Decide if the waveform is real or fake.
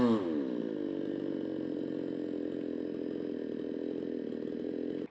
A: real